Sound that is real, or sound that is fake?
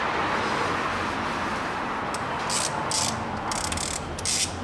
real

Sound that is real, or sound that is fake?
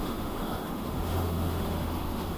fake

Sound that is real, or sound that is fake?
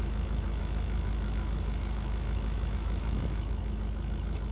fake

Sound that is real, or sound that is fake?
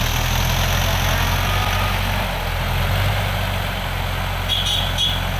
real